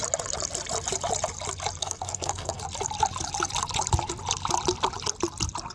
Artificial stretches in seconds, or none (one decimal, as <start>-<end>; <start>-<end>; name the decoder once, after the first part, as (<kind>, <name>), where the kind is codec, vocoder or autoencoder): 1.8-2.6 (codec, SNAC)